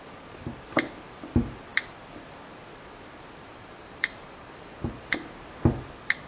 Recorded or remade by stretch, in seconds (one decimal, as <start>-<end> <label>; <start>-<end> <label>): 0.0-3.5 recorded; 3.5-5.1 remade; 5.1-6.3 recorded